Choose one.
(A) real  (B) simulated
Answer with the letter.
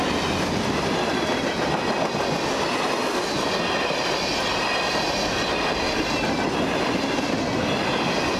A